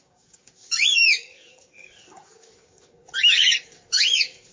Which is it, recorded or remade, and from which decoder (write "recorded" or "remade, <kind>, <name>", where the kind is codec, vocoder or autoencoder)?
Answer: remade, codec, DAC